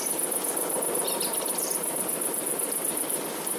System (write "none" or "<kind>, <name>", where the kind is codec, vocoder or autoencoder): vocoder, BigVGAN v2